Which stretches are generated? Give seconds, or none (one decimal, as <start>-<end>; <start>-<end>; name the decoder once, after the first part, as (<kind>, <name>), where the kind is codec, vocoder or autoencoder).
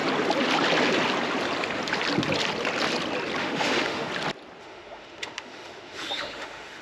3.4-4.1 (autoencoder, DAC-VAE); 4.6-6.8